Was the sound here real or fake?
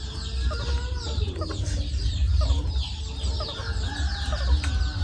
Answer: real